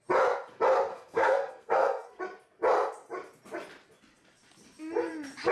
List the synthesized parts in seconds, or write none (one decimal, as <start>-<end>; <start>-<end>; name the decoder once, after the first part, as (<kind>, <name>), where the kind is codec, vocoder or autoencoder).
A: 0.9-2.2 (codec, SNAC)